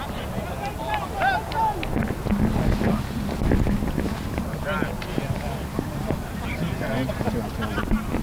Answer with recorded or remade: recorded